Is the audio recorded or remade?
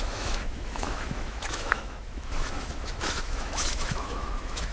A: remade